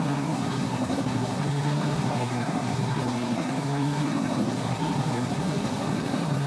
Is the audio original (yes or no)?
no